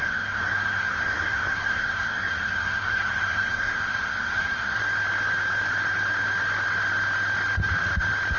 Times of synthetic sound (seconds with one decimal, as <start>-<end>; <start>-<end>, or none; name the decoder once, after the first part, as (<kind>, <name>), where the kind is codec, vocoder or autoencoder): 0.0-4.8 (codec, SNAC)